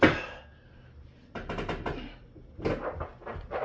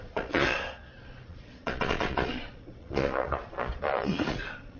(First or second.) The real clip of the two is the first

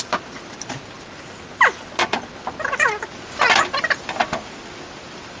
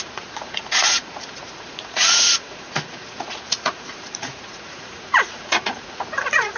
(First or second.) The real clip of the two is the first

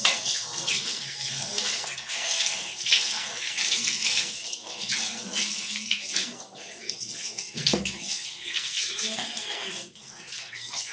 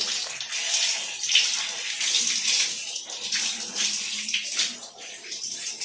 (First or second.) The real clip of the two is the second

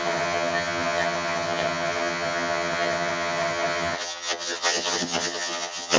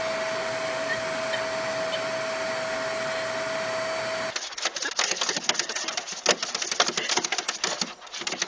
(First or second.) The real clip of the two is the second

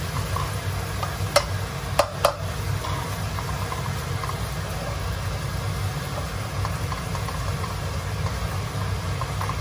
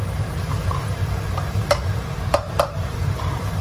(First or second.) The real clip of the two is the first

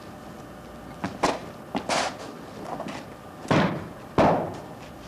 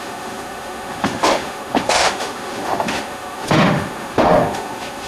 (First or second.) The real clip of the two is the first